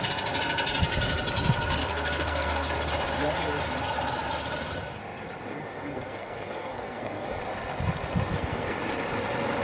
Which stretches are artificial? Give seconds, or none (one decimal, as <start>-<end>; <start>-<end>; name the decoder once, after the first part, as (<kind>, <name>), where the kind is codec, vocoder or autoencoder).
1.8-2.7 (codec, SNAC); 5.5-7.4; 8.3-8.8